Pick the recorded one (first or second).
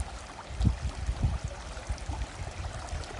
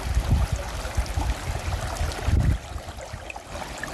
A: second